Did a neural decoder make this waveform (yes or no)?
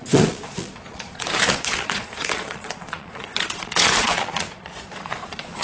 yes